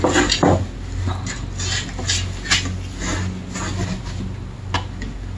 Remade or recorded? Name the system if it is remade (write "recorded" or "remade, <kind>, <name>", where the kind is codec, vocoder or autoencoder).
recorded